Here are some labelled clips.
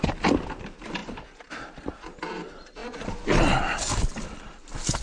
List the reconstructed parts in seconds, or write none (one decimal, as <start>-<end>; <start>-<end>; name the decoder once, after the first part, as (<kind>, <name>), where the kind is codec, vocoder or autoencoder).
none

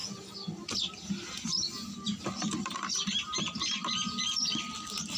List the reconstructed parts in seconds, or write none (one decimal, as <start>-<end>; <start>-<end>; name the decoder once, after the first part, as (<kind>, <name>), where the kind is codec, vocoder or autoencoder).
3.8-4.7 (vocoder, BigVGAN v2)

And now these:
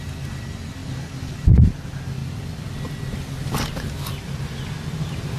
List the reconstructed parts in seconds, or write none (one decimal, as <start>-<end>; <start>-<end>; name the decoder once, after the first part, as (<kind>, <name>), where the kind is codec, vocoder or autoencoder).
0.8-1.7 (vocoder, BigVGAN v2)